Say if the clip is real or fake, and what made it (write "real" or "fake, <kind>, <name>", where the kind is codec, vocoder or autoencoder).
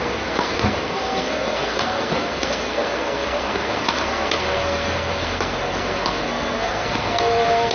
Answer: fake, codec, SNAC